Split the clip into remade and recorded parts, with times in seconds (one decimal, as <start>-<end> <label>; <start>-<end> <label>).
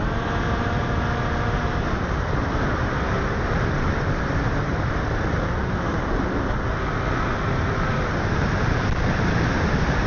0.0-5.6 remade; 5.6-7.2 recorded; 7.2-10.1 remade